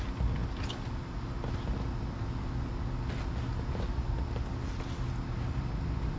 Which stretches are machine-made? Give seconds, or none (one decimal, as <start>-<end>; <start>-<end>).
none